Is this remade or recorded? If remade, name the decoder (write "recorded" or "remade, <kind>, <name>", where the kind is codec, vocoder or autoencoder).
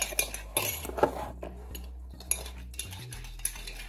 recorded